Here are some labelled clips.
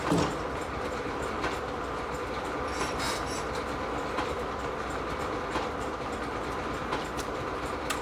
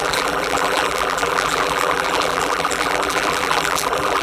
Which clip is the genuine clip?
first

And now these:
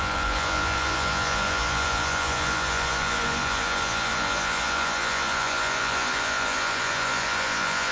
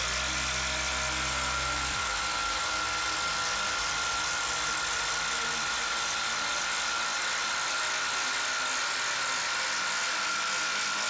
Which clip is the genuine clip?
second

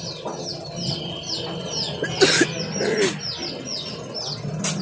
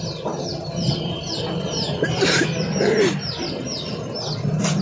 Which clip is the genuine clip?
first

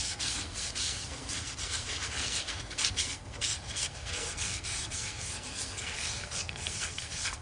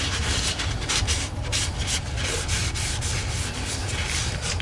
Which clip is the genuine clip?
second